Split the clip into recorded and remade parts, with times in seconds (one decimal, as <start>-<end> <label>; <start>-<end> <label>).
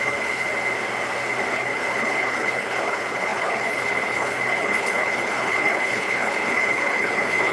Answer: 0.0-0.5 remade; 0.5-1.5 recorded; 1.5-7.5 remade